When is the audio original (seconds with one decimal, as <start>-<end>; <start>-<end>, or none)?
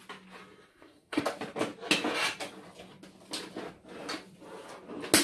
0.0-0.7; 1.2-5.2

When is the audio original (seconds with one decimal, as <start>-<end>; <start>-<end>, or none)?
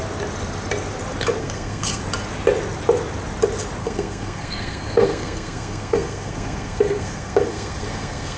0.0-1.4; 2.0-3.8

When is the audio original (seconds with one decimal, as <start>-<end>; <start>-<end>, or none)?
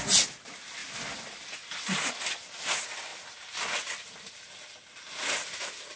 0.0-6.0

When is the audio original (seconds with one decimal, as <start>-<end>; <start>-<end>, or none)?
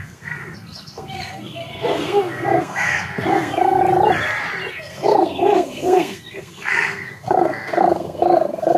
3.8-4.7